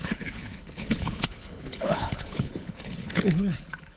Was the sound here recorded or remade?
remade